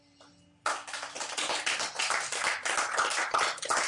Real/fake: real